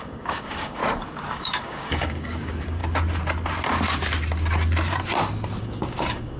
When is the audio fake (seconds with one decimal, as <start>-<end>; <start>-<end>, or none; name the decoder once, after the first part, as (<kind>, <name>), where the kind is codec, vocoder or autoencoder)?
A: 0.0-0.8 (codec, DAC); 1.3-2.8; 5.6-6.4